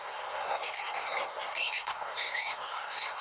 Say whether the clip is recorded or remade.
remade